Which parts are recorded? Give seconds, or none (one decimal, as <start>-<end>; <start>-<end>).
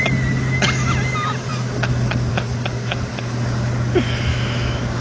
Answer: 0.0-4.3